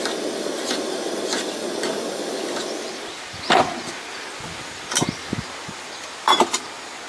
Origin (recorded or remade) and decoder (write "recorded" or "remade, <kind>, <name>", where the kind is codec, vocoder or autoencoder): recorded